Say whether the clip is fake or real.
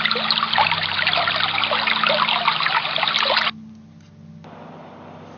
real